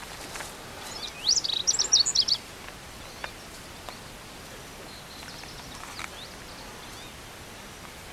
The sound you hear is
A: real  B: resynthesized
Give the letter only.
A